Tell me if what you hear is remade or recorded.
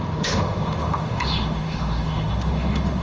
remade